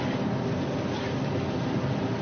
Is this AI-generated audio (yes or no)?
no